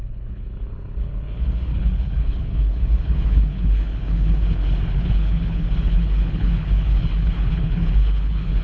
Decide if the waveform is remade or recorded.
remade